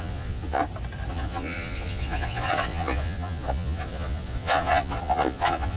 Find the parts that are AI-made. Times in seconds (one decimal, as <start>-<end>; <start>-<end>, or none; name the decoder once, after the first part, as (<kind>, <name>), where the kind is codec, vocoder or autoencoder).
0.0-0.6 (vocoder, Vocos); 1.1-5.8